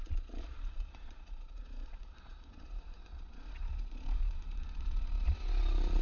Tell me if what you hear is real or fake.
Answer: fake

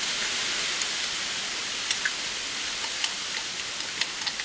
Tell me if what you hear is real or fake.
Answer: real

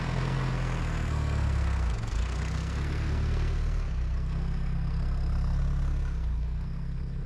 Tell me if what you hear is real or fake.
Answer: fake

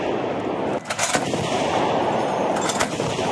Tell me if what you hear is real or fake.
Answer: real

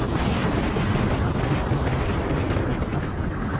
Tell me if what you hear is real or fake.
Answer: real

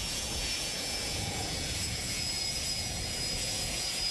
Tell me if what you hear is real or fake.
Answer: fake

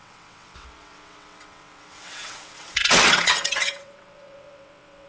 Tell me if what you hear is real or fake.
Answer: fake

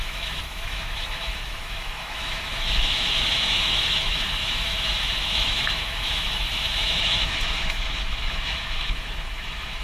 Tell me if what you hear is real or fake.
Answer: fake